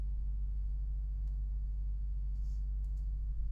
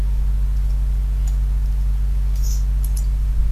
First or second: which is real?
second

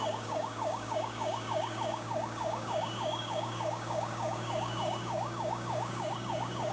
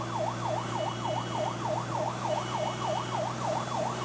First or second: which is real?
second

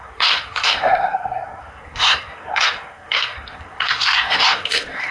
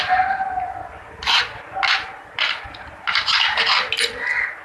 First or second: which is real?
second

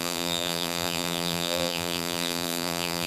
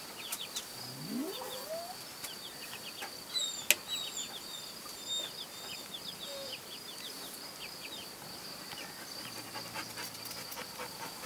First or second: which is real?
second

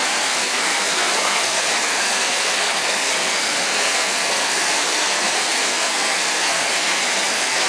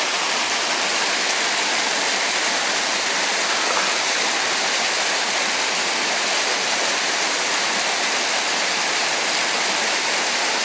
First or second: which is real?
second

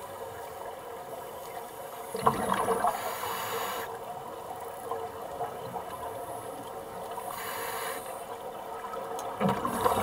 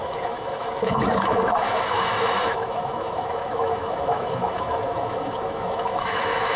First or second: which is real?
first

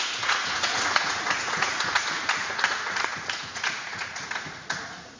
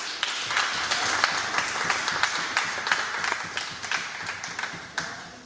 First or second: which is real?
second